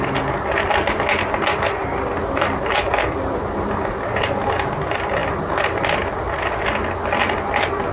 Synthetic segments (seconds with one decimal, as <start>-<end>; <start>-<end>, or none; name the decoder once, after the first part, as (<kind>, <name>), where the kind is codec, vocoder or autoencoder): none